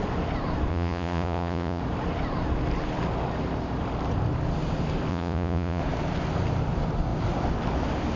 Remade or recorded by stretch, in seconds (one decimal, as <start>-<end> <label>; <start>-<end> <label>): 0.0-0.7 recorded; 0.7-1.8 remade; 1.8-5.1 recorded; 5.1-5.8 remade; 5.8-8.2 recorded